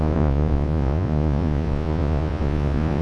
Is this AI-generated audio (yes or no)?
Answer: yes